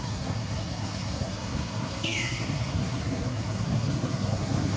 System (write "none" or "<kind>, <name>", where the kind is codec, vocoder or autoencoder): codec, SNAC